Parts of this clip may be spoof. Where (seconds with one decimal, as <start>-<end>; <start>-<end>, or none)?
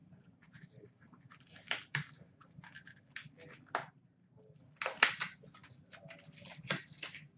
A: 0.0-2.6; 3.8-4.6